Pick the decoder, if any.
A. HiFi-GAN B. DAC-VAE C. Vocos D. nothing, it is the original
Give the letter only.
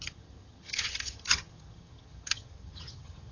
A